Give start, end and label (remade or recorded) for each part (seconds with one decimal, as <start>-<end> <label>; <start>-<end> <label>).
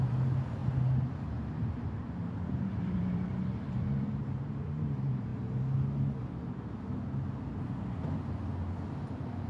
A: 0.0-5.3 remade; 5.3-9.1 recorded; 9.1-9.5 remade